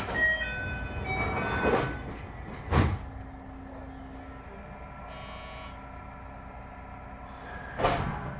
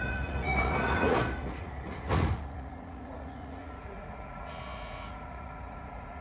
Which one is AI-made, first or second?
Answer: second